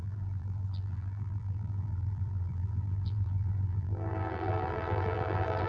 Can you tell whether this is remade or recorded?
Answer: remade